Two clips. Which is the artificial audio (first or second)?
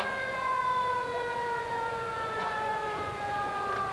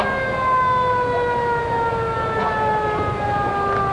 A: first